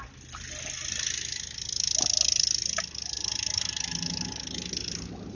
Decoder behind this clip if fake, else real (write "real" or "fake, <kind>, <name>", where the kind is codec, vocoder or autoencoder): real